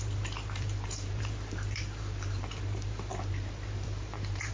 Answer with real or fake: fake